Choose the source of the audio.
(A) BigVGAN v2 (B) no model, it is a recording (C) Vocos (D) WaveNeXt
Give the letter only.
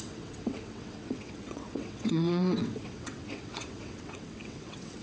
D